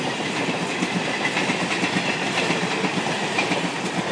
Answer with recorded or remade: recorded